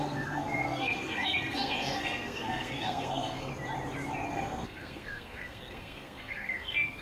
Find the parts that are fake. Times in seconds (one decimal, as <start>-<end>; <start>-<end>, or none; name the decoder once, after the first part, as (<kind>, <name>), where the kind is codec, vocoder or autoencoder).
0.0-3.5 (codec, SNAC); 4.3-7.0